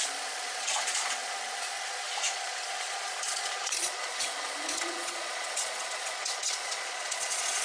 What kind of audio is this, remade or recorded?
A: remade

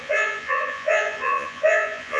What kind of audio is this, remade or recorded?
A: remade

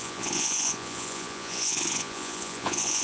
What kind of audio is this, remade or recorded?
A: remade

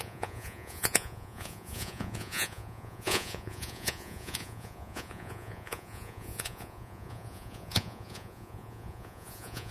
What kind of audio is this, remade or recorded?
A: remade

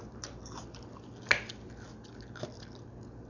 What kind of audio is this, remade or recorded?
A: recorded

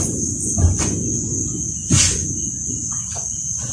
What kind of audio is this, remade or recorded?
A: remade